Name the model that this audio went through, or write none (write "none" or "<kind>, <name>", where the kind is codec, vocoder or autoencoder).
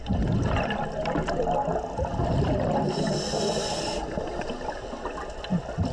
none